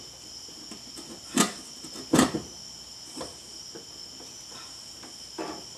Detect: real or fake real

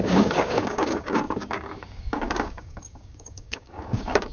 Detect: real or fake fake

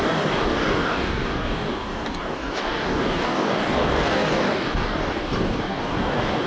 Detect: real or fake fake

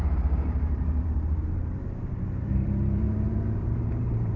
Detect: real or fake fake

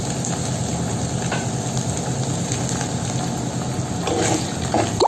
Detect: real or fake real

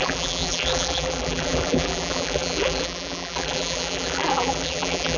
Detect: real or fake fake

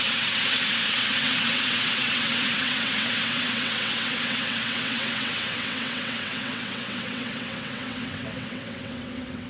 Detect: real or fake fake